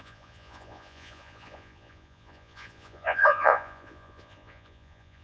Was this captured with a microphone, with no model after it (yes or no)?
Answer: no